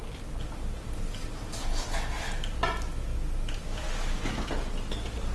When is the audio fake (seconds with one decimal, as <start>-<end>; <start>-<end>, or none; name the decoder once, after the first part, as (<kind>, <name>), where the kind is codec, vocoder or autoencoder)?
none